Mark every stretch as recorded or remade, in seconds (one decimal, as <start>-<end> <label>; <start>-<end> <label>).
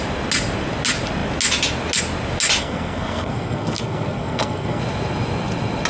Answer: 0.0-2.6 recorded; 2.6-4.8 remade; 4.8-5.9 recorded